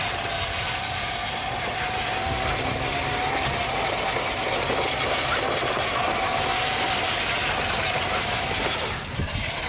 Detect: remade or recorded recorded